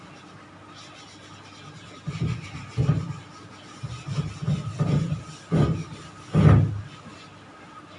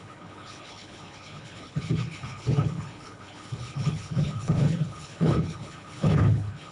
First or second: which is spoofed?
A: second